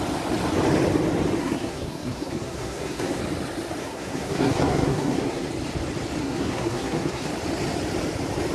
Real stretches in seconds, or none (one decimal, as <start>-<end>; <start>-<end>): 0.0-1.4; 3.2-3.8; 5.5-6.2; 7.3-8.5